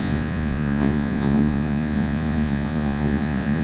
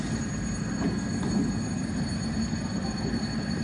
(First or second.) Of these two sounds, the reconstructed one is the first